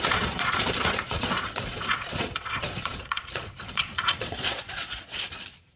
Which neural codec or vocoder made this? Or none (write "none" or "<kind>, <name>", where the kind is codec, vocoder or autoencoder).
vocoder, Vocos